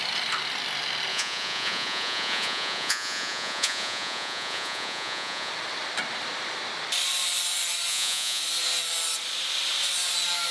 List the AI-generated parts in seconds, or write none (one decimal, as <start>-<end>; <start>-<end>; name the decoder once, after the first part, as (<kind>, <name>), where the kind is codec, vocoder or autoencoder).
1.1-5.5 (vocoder, Vocos); 7.9-8.4